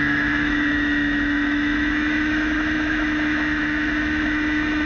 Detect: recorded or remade remade